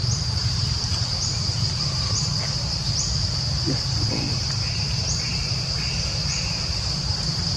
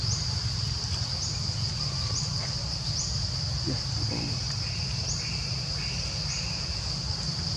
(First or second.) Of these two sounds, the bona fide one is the second